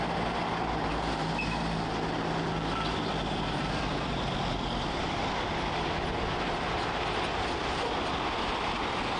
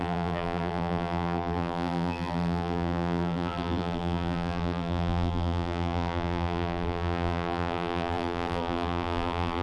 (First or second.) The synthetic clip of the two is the second